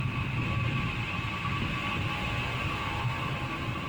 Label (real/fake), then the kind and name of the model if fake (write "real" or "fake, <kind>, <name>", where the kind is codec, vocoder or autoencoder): real